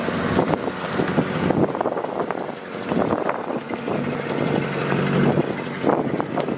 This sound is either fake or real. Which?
real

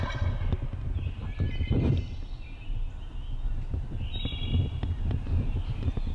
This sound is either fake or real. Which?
real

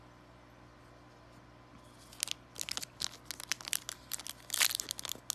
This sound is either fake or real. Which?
real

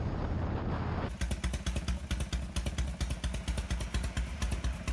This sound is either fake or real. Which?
real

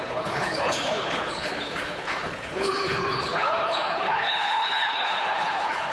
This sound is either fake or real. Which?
fake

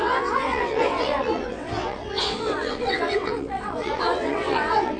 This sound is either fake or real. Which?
fake